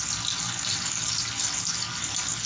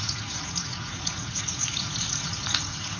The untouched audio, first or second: first